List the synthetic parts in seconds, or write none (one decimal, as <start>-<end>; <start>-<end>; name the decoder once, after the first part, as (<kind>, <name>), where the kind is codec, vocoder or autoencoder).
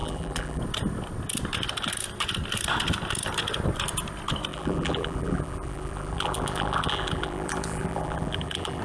0.0-0.6 (vocoder, BigVGAN v2); 4.5-8.8